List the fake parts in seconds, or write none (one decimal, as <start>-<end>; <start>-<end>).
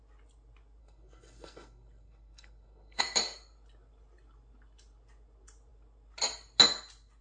0.8-3.0